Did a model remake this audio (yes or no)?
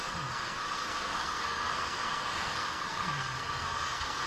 yes